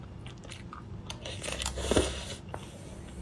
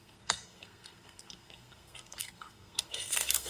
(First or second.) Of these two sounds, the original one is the first